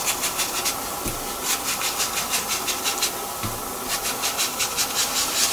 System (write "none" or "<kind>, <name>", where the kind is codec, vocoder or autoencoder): none